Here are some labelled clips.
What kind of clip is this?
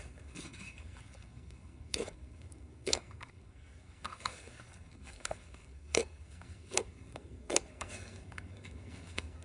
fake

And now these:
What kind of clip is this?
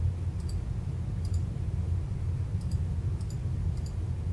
real